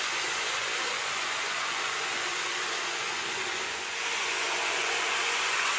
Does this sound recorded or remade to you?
remade